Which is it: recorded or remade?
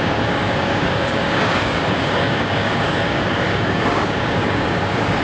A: remade